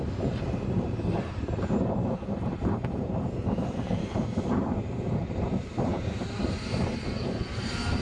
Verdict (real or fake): fake